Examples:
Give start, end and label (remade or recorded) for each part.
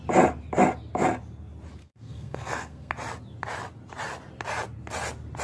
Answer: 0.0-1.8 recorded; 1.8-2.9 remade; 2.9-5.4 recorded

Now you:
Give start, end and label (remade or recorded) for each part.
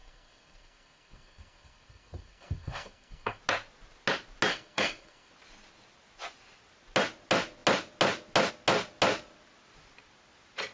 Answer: 0.0-3.4 remade; 3.4-4.5 recorded; 4.5-5.3 remade; 5.3-10.7 recorded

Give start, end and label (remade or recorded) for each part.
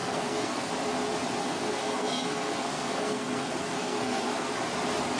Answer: 0.0-0.7 remade; 0.7-1.4 recorded; 1.4-4.5 remade; 4.5-5.2 recorded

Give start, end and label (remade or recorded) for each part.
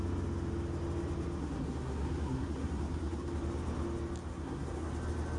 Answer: 0.0-1.4 recorded; 1.4-3.3 remade; 3.3-4.3 recorded; 4.3-4.9 remade; 4.9-5.4 recorded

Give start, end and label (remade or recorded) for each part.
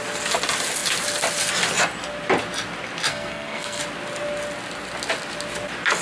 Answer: 0.0-3.1 recorded; 3.1-3.8 remade; 3.8-6.0 recorded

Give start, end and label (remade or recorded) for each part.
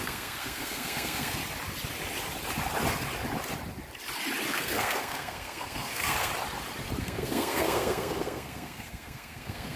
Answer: 0.0-1.4 remade; 1.4-4.5 recorded; 4.5-6.3 remade; 6.3-7.0 recorded; 7.0-9.8 remade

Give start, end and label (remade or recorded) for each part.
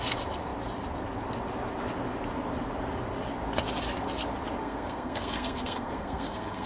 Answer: 0.0-4.6 recorded; 4.6-6.7 remade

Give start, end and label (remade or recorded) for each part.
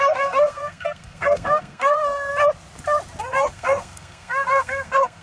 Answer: 0.0-2.3 remade; 2.3-3.2 recorded; 3.2-5.2 remade